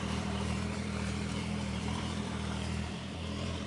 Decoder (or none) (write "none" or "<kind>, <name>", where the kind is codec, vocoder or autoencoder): vocoder, BigVGAN v2